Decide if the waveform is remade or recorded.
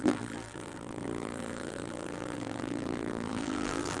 remade